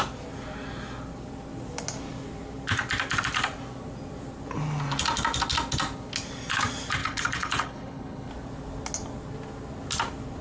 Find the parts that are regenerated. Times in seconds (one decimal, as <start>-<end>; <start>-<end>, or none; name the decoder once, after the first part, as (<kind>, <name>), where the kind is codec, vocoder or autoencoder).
7.0-8.3 (codec, HILCodec)